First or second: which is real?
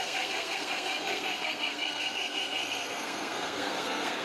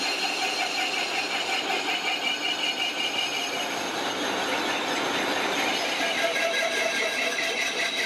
second